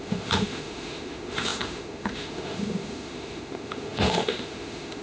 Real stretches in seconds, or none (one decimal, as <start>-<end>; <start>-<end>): none

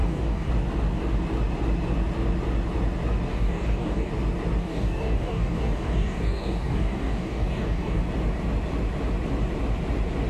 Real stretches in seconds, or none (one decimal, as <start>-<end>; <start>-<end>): 0.5-3.3; 4.1-4.6; 8.0-10.3

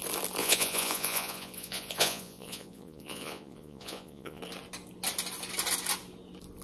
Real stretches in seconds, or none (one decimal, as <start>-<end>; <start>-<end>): 0.0-0.4; 4.4-6.6